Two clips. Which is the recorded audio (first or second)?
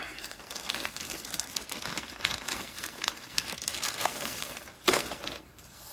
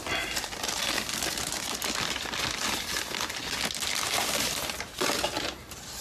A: second